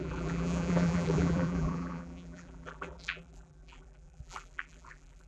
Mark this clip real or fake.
fake